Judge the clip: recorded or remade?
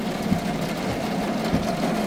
recorded